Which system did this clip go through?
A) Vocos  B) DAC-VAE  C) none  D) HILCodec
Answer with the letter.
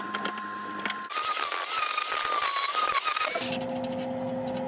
C